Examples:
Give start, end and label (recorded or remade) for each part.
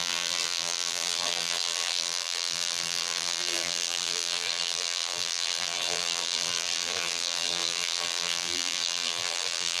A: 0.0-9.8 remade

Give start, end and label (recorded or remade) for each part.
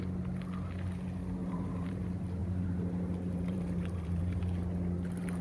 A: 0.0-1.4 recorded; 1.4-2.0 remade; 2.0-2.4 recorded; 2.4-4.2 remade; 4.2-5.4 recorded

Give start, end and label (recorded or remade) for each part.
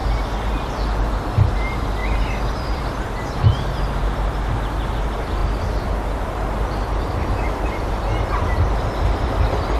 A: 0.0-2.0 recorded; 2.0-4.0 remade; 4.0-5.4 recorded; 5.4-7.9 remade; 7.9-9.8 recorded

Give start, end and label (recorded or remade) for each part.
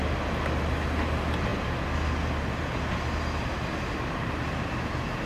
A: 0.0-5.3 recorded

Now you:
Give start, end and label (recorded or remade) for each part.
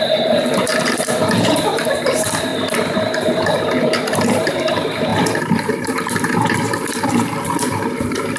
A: 0.0-2.5 remade; 2.5-3.0 recorded; 3.0-8.4 remade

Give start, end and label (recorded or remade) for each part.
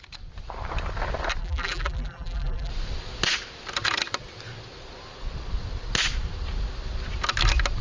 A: 0.0-1.4 recorded; 1.4-2.7 remade; 2.7-7.8 recorded